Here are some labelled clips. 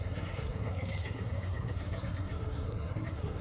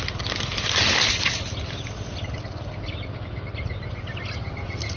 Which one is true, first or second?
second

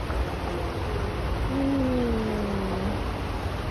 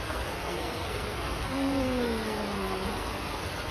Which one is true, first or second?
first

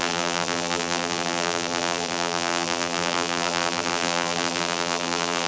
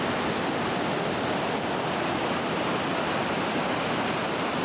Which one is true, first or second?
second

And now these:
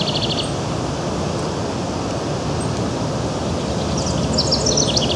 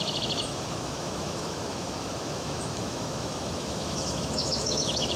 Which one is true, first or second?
first